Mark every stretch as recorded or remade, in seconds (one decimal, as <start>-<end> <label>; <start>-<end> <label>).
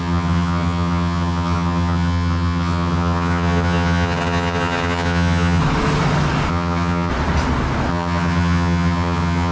0.0-5.6 remade; 5.6-6.5 recorded; 6.5-7.1 remade; 7.1-7.9 recorded; 7.9-9.5 remade